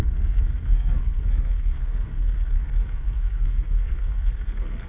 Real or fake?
fake